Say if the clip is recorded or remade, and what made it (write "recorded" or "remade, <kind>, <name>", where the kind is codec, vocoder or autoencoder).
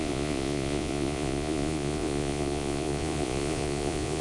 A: remade, vocoder, Vocos